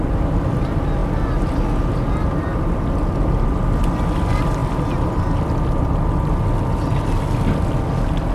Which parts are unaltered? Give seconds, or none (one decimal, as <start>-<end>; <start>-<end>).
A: 0.0-8.3